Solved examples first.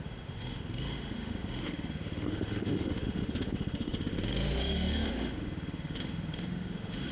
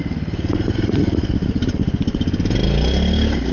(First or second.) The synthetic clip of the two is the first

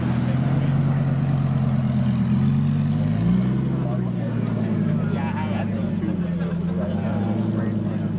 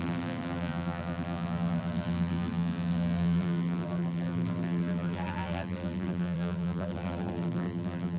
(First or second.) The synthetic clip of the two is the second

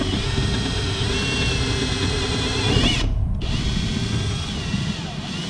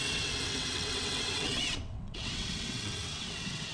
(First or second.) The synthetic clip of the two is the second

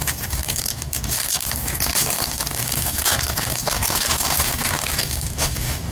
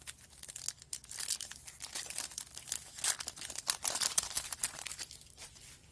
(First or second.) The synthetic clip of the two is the first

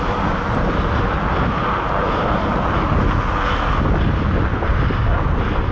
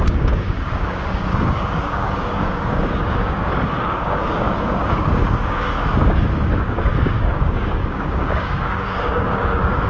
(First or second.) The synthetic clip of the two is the second